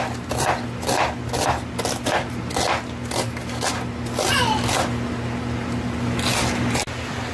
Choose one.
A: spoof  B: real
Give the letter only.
B